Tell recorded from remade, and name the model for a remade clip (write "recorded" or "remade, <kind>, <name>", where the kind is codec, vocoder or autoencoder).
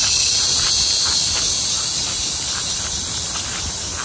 remade, vocoder, BigVGAN v2